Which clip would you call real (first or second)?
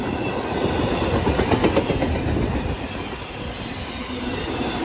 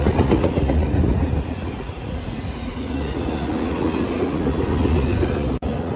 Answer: first